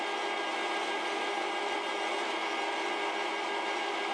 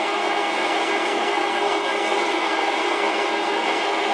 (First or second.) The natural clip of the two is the first